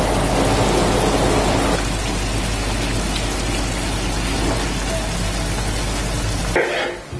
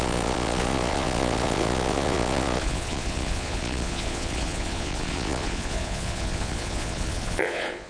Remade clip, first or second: second